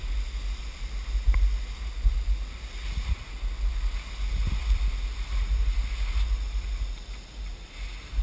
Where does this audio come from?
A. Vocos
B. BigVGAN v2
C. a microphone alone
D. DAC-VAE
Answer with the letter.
C